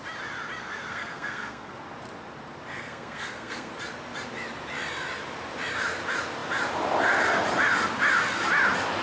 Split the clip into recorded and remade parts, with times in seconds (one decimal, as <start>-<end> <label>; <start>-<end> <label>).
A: 0.0-0.6 recorded; 0.6-1.7 remade; 1.7-2.7 recorded; 2.7-3.7 remade; 3.7-9.0 recorded

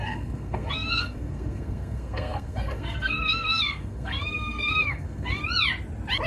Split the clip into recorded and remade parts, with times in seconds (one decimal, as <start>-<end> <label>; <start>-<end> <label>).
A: 0.0-5.4 remade; 5.4-6.3 recorded

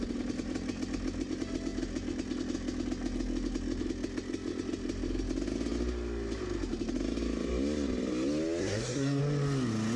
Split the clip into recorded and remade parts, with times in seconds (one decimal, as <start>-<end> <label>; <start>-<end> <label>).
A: 0.0-8.6 recorded; 8.6-9.2 remade; 9.2-10.0 recorded

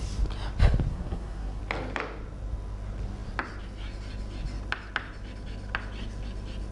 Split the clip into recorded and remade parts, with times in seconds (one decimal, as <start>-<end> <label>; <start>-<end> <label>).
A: 0.0-0.9 recorded; 0.9-1.6 remade; 1.6-6.7 recorded